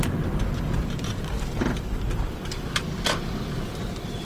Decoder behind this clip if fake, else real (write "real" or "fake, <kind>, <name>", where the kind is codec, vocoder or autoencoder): fake, vocoder, BigVGAN v2